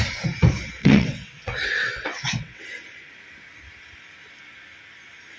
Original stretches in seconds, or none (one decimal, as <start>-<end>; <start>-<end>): 0.0-0.8; 2.6-5.4